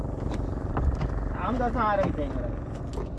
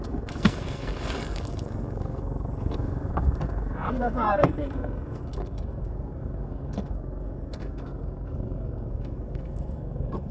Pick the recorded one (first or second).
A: first